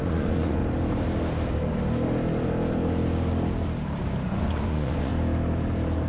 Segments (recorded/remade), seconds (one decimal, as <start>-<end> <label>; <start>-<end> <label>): 0.0-0.6 remade; 0.6-4.3 recorded; 4.3-5.1 remade; 5.1-6.1 recorded